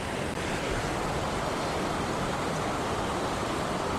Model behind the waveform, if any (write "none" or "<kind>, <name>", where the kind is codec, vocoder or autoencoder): none